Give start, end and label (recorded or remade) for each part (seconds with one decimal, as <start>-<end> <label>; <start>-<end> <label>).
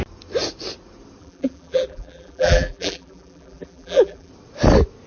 0.0-1.2 recorded; 1.2-4.3 remade; 4.3-5.1 recorded